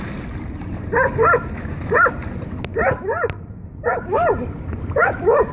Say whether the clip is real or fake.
real